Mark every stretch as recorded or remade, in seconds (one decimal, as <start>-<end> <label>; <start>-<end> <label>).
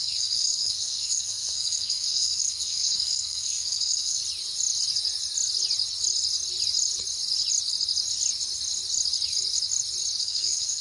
0.0-4.2 remade; 4.2-10.2 recorded; 10.2-10.8 remade